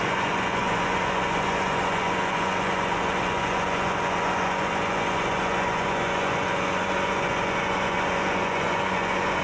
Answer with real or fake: fake